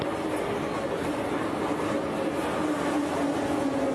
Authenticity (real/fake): real